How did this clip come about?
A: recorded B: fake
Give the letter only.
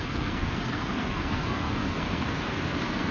B